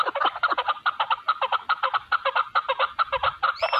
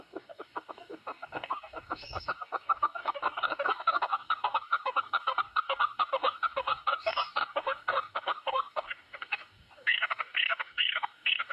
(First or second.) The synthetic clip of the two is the second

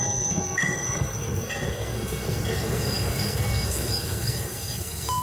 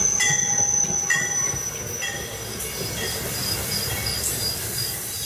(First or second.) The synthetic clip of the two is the first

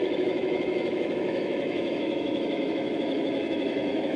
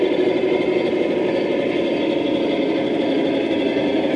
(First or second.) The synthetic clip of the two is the first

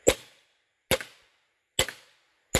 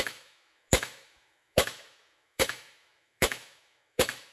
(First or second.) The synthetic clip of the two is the second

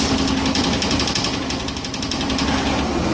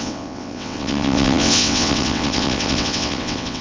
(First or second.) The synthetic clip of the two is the second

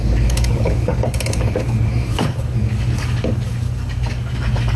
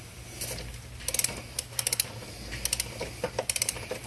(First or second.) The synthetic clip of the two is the first